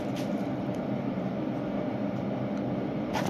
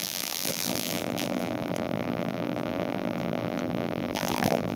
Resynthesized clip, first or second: second